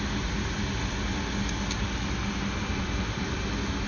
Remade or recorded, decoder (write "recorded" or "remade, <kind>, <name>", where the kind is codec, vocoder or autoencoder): recorded